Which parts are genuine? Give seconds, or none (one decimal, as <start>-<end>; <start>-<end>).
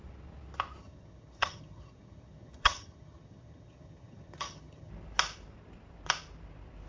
0.0-0.8; 4.9-6.9